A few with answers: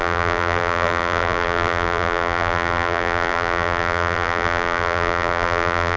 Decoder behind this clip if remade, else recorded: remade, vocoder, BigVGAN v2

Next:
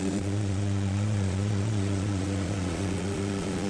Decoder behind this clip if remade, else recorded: remade, vocoder, Vocos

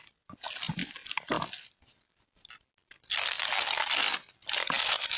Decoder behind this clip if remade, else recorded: recorded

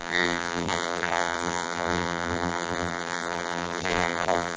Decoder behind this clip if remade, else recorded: remade, vocoder, BigVGAN v2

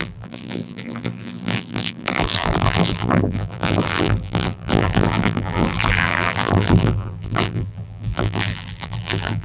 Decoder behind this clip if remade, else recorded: remade, vocoder, BigVGAN v2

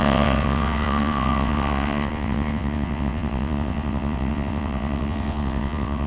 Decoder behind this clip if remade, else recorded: remade, vocoder, WaveNeXt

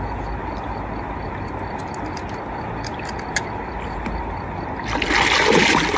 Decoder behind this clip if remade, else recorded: recorded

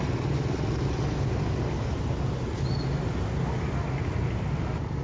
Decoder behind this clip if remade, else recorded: recorded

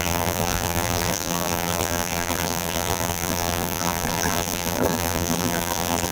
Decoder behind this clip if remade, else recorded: remade, vocoder, BigVGAN v2